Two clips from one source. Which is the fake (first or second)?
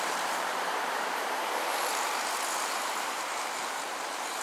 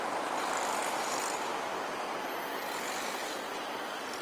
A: first